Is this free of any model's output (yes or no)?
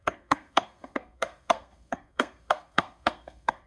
no